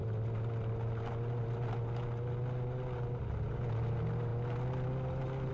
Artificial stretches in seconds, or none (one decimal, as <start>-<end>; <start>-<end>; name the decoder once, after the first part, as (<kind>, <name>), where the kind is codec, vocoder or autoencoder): none

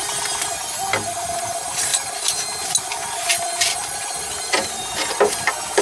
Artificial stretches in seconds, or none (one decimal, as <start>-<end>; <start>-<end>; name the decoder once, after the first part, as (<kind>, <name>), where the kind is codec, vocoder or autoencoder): none

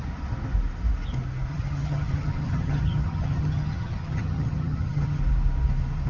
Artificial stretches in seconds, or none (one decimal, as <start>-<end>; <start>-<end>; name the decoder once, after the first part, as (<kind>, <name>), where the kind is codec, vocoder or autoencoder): 1.5-5.2 (vocoder, HiFi-GAN)

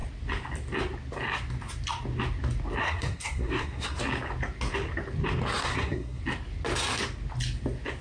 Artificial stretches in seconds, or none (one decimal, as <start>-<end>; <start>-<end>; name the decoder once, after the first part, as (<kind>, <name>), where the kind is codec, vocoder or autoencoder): 2.8-4.0 (codec, SNAC); 5.6-6.2